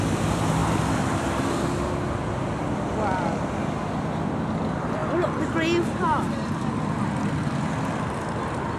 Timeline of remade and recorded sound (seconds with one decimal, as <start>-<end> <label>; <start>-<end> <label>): 0.0-8.8 recorded